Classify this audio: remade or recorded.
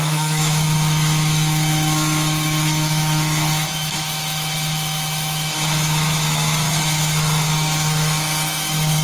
remade